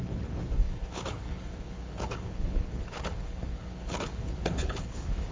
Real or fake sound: fake